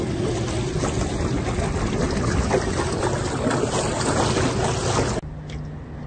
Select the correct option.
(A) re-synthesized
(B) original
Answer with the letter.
B